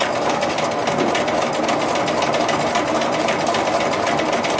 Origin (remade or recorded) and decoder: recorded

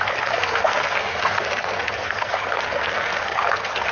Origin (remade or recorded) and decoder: remade, codec, SNAC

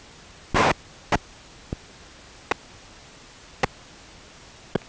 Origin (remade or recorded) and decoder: recorded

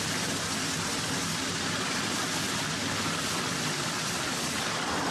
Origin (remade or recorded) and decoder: remade, vocoder, BigVGAN v2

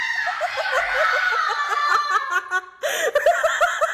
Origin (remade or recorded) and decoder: recorded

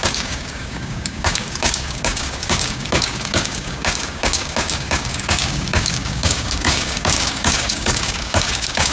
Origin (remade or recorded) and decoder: remade, codec, DAC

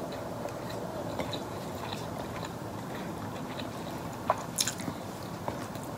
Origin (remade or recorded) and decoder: recorded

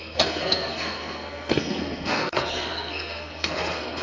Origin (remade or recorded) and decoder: remade, codec, SNAC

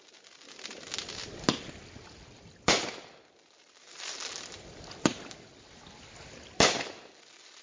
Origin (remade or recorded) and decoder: recorded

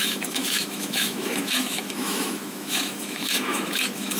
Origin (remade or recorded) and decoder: remade, autoencoder, DAC-VAE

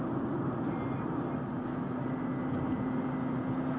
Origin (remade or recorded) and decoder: recorded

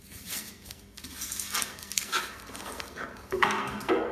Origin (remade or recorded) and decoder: remade, codec, SNAC